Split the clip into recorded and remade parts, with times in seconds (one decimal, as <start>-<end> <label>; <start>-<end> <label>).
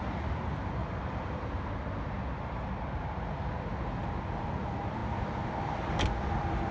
0.0-0.8 recorded; 0.8-1.5 remade; 1.5-6.7 recorded